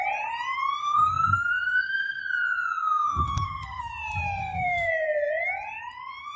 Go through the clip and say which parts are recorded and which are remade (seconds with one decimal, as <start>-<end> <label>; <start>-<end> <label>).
0.0-0.8 recorded; 0.8-2.2 remade; 2.2-2.8 recorded; 2.8-3.9 remade; 3.9-4.4 recorded; 4.4-4.9 remade; 4.9-6.4 recorded